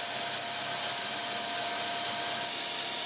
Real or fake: real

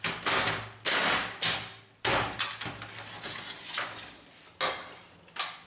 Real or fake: real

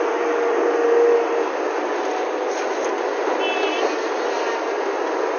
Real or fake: real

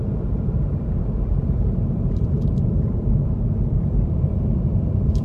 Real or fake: fake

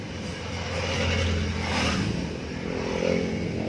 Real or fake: real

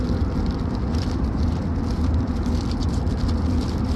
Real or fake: fake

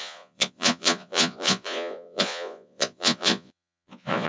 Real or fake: fake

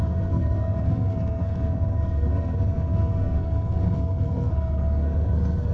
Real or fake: fake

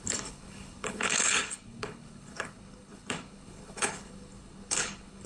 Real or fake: fake